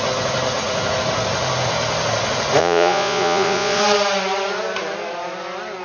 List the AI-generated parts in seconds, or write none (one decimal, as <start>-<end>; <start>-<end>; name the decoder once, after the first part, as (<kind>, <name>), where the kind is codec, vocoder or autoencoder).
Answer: 2.6-3.8 (vocoder, Vocos)